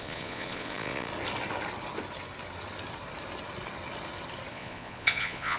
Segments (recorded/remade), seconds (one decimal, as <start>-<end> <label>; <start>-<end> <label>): 0.0-1.1 remade; 1.1-4.5 recorded; 4.5-5.6 remade